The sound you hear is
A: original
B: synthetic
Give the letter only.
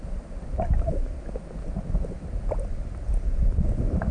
A